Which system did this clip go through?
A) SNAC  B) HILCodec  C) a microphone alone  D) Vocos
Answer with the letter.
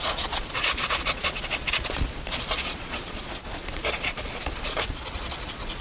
D